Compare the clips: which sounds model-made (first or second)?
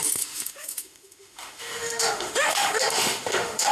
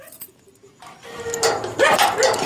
first